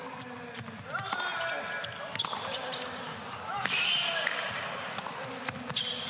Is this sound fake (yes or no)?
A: no